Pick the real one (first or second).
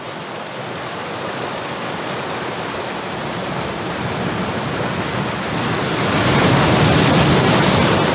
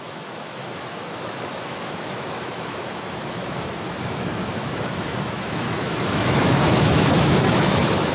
first